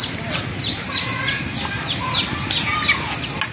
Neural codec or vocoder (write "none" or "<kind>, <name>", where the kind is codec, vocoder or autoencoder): none